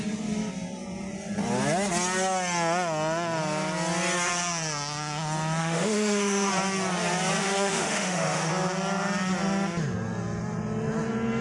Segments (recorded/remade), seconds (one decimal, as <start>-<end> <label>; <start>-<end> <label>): 0.0-5.6 recorded; 5.6-6.5 remade; 6.5-7.4 recorded; 7.4-8.5 remade; 8.5-11.4 recorded